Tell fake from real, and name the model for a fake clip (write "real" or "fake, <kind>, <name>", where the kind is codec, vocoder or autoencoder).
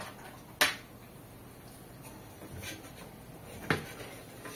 real